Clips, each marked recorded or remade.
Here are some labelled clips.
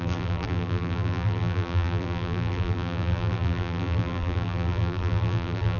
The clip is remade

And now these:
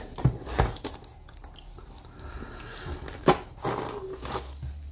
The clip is recorded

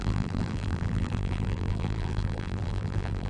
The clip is remade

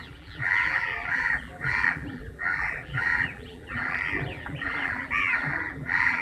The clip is remade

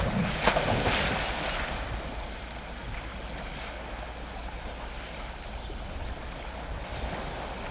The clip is recorded